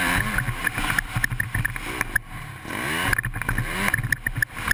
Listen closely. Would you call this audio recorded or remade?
recorded